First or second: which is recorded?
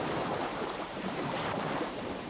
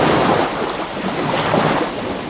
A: second